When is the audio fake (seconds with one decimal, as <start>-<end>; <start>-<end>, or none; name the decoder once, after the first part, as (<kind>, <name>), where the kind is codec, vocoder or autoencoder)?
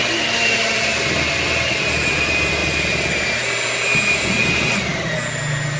none